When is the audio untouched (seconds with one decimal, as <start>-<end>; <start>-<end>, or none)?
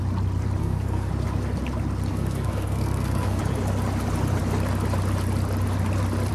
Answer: 0.0-0.6; 1.1-2.1; 3.4-6.3